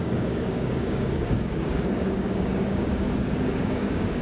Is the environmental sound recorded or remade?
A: remade